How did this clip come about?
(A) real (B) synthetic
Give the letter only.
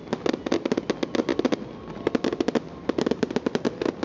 A